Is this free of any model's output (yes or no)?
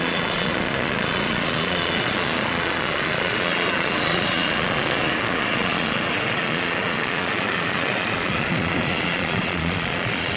no